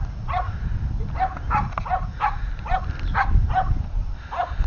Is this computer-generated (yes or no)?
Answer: no